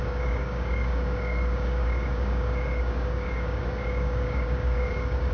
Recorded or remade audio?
remade